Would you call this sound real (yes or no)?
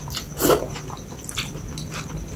yes